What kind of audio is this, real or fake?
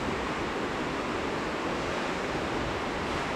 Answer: real